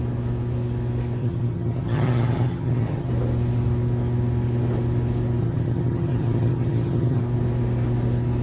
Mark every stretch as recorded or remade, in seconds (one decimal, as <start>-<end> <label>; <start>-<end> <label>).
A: 0.0-1.2 recorded; 1.2-3.1 remade; 3.1-5.4 recorded; 5.4-7.2 remade; 7.2-8.4 recorded